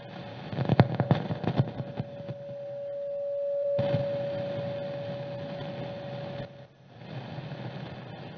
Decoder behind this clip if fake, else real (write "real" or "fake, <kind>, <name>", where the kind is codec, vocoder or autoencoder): real